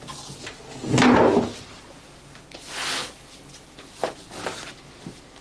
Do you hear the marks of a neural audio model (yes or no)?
no